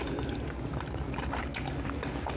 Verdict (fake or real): real